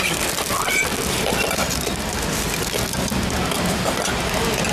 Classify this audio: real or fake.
real